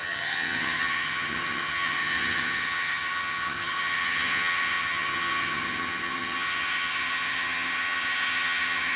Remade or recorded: remade